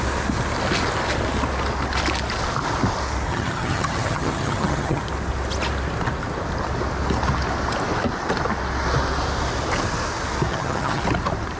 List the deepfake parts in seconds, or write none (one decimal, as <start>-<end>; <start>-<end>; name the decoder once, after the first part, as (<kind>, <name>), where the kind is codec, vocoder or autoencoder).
3.3-5.0 (vocoder, HiFi-GAN); 10.5-11.0